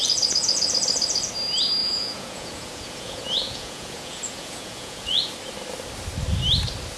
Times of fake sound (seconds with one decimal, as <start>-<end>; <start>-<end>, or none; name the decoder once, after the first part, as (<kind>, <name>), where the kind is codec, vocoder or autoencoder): 0.0-0.7 (vocoder, Vocos); 1.8-5.3